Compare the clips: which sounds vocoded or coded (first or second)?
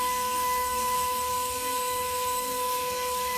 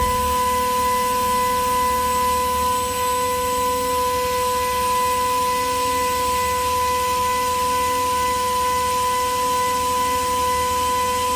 first